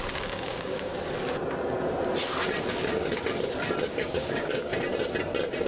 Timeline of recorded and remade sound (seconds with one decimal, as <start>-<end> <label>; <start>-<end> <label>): 0.0-0.9 remade; 0.9-3.8 recorded; 3.8-4.7 remade; 4.7-5.7 recorded